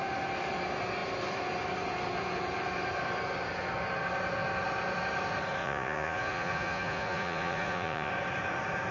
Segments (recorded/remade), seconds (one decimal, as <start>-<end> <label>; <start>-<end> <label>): 0.0-5.6 recorded; 5.6-8.1 remade; 8.1-8.9 recorded